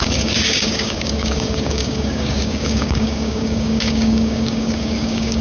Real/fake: fake